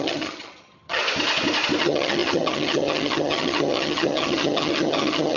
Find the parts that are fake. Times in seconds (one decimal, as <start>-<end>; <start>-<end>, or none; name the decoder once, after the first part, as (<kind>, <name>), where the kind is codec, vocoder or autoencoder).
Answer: 0.0-1.0 (vocoder, HiFi-GAN); 1.8-5.4